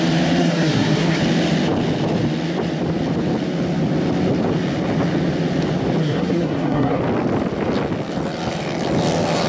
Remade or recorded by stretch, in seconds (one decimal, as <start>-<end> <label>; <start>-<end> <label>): 0.0-0.4 recorded; 0.4-1.2 remade; 1.2-6.0 recorded; 6.0-7.0 remade; 7.0-9.5 recorded